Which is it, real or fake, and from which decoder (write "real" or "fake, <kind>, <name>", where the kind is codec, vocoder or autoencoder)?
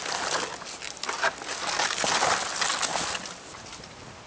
real